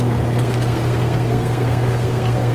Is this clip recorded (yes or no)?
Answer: no